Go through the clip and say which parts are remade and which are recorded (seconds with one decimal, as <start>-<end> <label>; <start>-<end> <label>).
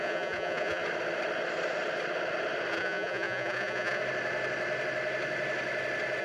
0.0-0.8 remade; 0.8-2.7 recorded; 2.7-4.0 remade; 4.0-6.2 recorded